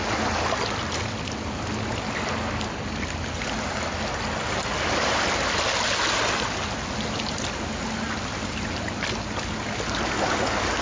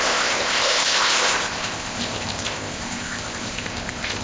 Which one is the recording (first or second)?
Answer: first